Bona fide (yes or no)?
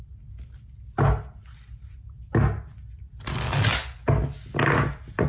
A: yes